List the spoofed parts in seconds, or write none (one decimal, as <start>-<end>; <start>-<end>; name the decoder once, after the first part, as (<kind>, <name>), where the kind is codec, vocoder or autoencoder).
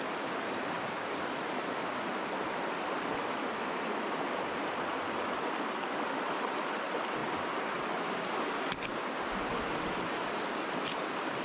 none